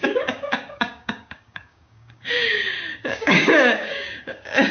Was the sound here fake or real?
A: fake